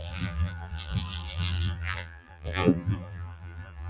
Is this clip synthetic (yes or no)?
yes